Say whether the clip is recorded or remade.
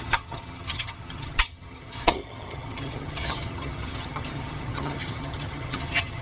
remade